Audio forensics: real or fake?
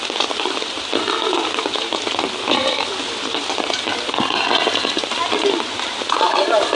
real